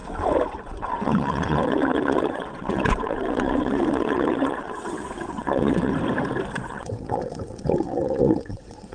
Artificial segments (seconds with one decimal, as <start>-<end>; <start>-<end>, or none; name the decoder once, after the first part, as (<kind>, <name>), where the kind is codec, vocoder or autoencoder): 0.6-5.9 (vocoder, WaveNeXt); 6.7-8.9